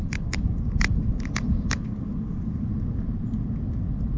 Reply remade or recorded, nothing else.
recorded